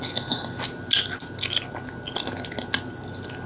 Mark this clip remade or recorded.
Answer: recorded